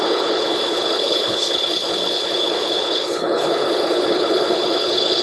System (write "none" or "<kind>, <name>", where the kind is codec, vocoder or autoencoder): codec, HILCodec